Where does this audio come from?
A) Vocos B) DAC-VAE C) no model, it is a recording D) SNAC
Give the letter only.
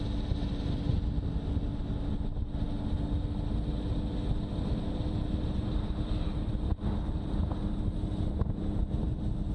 C